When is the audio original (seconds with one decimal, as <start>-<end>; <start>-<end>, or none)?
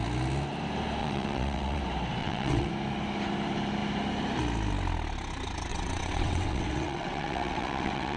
0.0-1.0; 1.8-2.2; 2.7-5.7